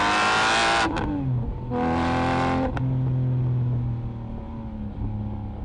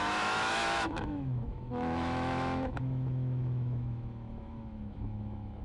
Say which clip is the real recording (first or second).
first